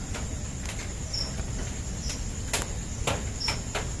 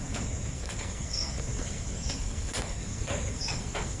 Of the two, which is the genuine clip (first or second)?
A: first